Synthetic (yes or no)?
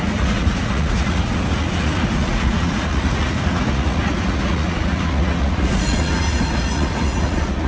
yes